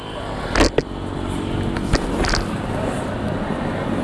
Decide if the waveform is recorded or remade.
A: recorded